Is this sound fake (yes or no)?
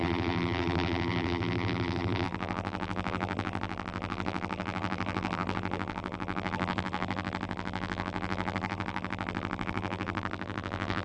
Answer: yes